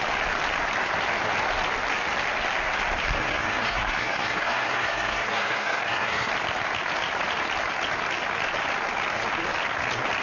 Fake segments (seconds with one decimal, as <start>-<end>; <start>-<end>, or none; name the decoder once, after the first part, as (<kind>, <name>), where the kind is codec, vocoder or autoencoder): 3.2-6.3 (codec, SNAC)